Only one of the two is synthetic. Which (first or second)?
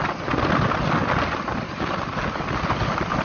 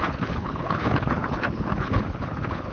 second